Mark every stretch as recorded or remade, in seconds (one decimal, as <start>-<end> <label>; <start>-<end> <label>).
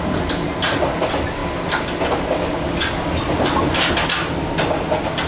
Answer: 0.0-5.3 recorded